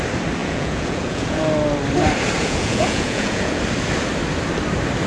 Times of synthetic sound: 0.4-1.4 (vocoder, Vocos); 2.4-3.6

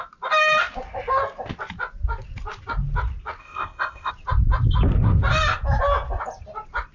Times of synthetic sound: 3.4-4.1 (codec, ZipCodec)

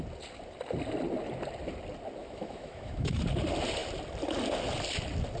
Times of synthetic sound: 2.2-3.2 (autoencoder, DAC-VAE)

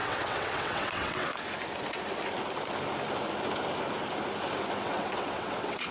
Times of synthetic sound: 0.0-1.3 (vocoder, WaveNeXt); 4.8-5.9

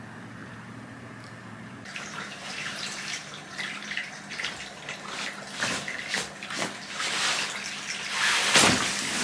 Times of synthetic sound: 0.4-4.1 (vocoder, BigVGAN v2)

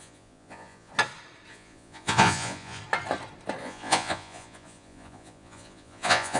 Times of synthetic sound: 0.0-0.9 (vocoder, Vocos); 1.5-2.8; 3.6-6.4

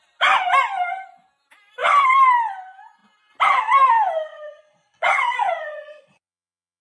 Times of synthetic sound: 4.3-6.8 (vocoder, Vocos)

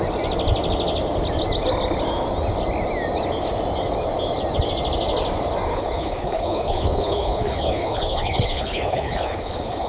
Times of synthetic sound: 5.7-9.9 (codec, HILCodec)